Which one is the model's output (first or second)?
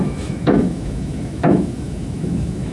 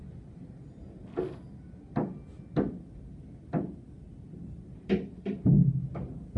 first